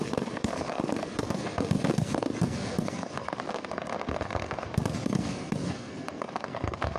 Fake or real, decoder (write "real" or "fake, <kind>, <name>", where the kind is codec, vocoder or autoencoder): fake, codec, SNAC